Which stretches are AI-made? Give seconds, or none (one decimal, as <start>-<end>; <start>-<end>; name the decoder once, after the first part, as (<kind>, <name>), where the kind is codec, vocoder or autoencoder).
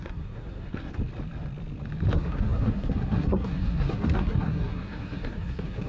0.0-0.9 (codec, SNAC); 2.1-5.9